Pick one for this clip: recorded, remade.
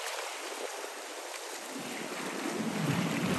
recorded